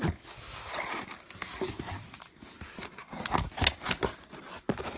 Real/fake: real